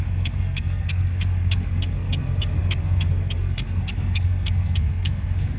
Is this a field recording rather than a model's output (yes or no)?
no